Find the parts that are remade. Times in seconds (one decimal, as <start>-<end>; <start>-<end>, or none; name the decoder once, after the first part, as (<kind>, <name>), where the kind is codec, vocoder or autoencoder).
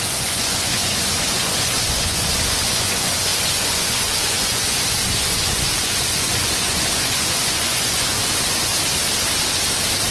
0.0-8.7 (vocoder, Vocos)